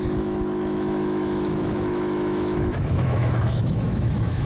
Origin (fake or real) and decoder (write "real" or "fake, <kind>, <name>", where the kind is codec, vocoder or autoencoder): fake, autoencoder, DAC-VAE